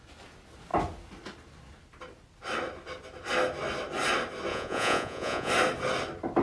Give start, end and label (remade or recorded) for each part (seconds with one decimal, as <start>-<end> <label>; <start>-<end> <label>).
0.0-4.5 recorded; 4.5-5.5 remade; 5.5-6.4 recorded